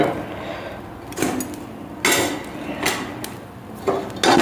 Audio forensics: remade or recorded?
recorded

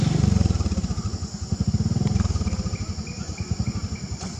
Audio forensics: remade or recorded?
recorded